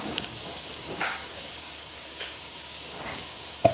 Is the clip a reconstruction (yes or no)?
yes